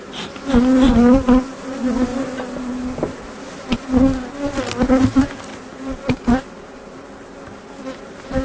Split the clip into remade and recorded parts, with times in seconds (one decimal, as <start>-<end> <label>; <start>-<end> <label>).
0.0-8.4 recorded